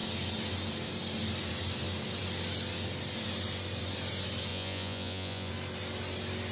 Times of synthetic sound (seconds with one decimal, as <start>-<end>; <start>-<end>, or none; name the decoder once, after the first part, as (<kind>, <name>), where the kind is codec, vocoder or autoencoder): 4.5-5.5 (vocoder, Vocos)